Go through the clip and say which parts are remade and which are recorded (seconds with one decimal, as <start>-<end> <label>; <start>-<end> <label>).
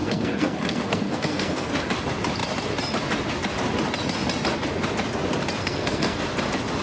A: 0.0-1.7 remade; 1.7-5.6 recorded; 5.6-6.2 remade; 6.2-6.8 recorded